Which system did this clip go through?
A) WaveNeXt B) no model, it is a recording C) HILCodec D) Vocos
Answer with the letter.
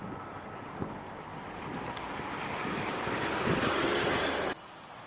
B